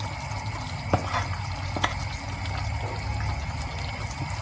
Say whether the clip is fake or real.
real